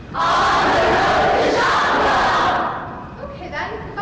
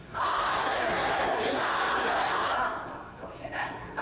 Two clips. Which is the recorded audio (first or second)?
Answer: first